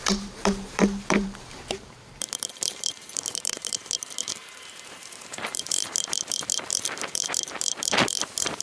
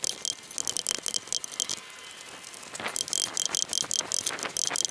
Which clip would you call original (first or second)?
second